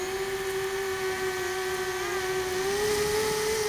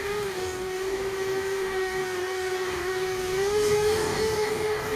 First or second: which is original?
first